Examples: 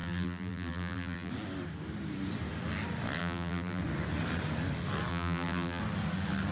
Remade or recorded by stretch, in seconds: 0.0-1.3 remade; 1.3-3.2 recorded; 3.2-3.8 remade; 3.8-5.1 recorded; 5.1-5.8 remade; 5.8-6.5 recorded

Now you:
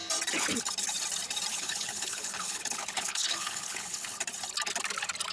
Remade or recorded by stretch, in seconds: 0.0-1.5 recorded; 1.5-4.2 remade; 4.2-5.3 recorded

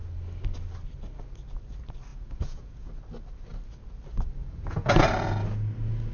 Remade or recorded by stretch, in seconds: 0.0-2.1 recorded; 2.1-2.9 remade; 2.9-4.4 recorded; 4.4-5.0 remade; 5.0-6.1 recorded

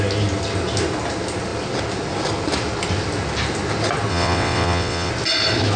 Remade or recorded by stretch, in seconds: 0.0-4.1 recorded; 4.1-5.1 remade; 5.1-5.8 recorded

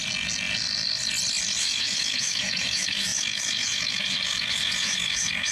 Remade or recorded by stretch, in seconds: 0.0-1.6 recorded; 1.6-5.5 remade